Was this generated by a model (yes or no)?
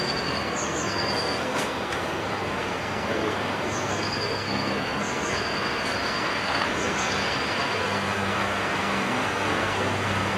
yes